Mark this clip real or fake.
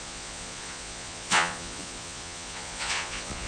fake